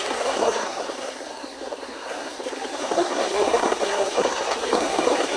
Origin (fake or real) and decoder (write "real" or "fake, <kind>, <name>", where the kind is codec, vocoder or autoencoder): fake, codec, SNAC